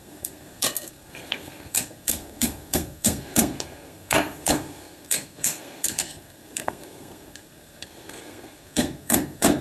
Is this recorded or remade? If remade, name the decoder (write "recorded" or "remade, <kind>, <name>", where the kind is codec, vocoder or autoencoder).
remade, codec, SNAC